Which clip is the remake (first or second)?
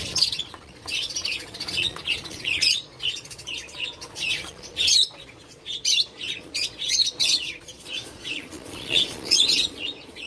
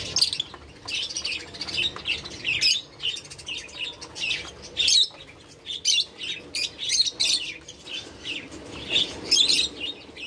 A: first